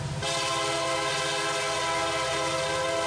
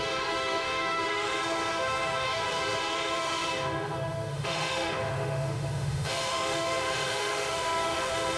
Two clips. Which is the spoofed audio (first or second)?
second